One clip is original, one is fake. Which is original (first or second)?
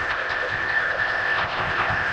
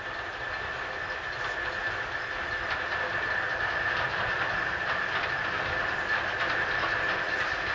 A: second